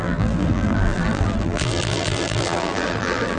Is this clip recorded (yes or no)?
no